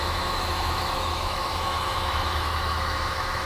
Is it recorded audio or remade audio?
remade